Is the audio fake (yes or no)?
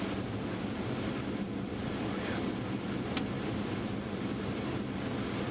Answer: no